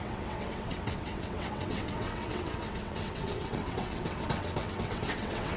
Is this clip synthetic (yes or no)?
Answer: yes